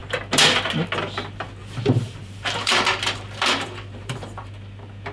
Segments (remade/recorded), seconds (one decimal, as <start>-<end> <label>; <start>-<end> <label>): 0.0-1.6 recorded; 1.6-4.5 remade; 4.5-5.1 recorded